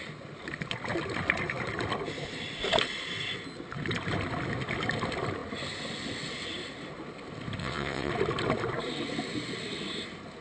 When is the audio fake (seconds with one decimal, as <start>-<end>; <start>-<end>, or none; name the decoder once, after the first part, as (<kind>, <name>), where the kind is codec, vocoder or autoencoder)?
7.6-8.1 (vocoder, WaveNeXt)

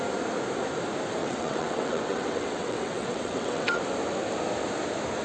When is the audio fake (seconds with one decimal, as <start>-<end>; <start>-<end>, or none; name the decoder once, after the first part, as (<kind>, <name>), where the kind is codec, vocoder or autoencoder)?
1.2-3.8 (vocoder, WaveNeXt)

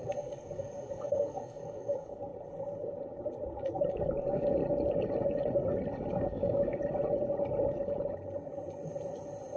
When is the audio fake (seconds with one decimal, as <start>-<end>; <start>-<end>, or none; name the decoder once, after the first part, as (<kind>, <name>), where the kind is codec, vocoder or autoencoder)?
0.0-2.3 (codec, DAC); 3.9-4.6; 6.1-6.7

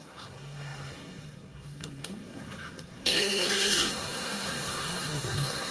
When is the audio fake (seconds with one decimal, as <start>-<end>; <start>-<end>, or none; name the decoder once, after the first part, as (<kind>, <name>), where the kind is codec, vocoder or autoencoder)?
0.0-5.7 (codec, SNAC)

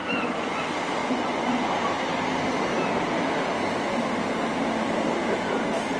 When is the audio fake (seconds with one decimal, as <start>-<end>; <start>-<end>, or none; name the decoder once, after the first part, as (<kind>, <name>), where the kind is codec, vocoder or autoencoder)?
0.0-0.6 (vocoder, Vocos); 1.0-1.8

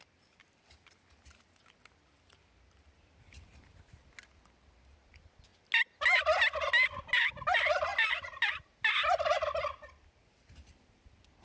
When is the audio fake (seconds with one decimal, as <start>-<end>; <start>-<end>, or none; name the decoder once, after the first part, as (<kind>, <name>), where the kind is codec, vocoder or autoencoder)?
none